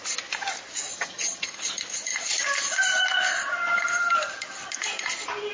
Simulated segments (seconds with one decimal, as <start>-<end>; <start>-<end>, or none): 0.9-1.5